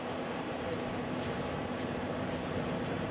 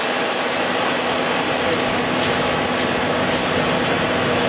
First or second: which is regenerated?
first